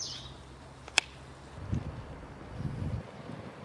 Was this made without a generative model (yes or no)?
yes